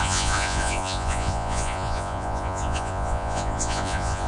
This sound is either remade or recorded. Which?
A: remade